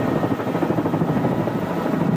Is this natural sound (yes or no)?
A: yes